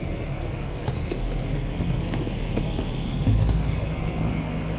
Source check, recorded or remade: remade